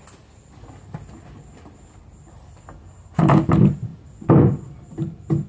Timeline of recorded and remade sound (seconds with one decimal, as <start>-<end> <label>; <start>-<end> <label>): 0.0-5.5 recorded